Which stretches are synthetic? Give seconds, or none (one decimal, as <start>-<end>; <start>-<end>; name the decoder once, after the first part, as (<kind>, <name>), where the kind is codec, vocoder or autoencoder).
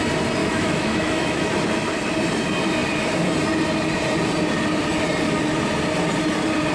0.4-1.5 (autoencoder, DAC-VAE)